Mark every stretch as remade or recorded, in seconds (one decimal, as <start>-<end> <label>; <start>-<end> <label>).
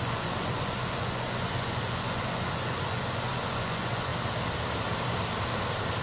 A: 0.0-4.1 remade; 4.1-6.0 recorded